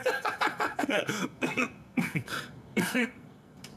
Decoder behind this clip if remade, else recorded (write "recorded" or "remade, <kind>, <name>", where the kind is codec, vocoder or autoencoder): remade, codec, SNAC